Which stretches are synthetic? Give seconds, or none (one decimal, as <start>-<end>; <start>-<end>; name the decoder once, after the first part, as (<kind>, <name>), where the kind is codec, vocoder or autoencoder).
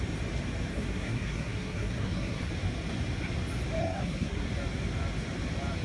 0.7-2.5 (codec, SNAC); 3.8-4.5